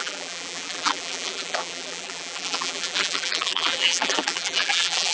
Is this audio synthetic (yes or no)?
yes